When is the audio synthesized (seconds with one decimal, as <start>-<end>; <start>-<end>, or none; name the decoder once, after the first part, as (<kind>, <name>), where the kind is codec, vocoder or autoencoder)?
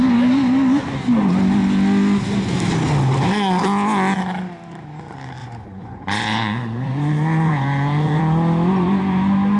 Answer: 5.4-8.2 (vocoder, Vocos)